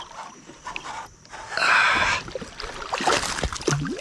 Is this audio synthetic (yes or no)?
no